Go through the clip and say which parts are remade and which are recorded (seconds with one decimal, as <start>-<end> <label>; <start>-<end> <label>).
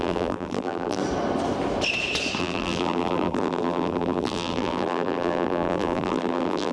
0.0-1.0 remade; 1.0-2.4 recorded; 2.4-6.7 remade